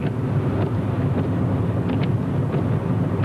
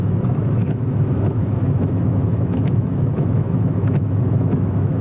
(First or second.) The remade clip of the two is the second